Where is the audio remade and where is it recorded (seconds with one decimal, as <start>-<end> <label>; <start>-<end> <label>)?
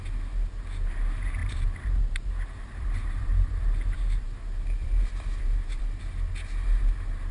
0.0-1.4 recorded; 1.4-5.8 remade; 5.8-7.3 recorded